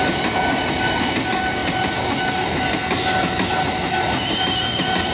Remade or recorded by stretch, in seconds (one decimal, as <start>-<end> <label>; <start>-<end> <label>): 0.0-5.1 recorded